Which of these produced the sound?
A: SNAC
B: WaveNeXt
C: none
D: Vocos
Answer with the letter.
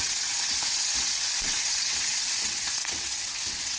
B